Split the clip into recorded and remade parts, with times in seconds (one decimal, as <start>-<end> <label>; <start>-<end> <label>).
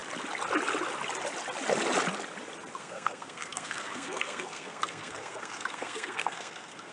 0.0-2.8 recorded; 2.8-6.9 remade